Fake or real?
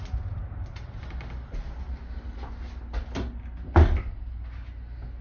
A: real